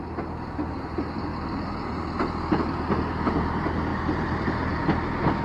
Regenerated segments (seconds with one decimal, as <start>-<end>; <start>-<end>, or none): none